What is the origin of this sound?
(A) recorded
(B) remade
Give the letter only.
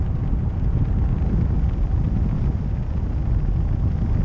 A